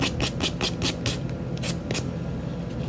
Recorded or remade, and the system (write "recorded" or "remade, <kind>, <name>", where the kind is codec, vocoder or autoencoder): recorded